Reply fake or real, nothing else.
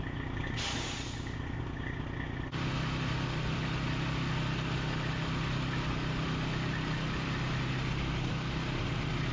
real